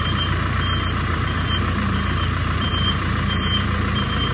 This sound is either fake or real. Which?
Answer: fake